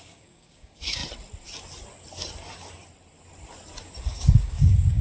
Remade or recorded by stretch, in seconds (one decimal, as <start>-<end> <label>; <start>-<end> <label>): 0.0-1.0 remade; 1.0-4.0 recorded; 4.0-5.0 remade